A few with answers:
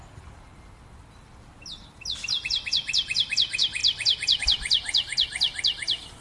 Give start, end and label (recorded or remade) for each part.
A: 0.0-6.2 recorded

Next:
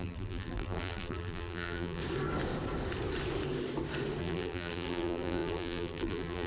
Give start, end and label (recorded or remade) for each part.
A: 0.0-2.0 remade; 2.0-4.2 recorded; 4.2-6.5 remade

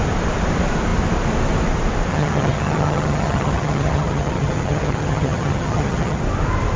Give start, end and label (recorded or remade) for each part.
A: 0.0-2.1 recorded; 2.1-6.2 remade; 6.2-6.8 recorded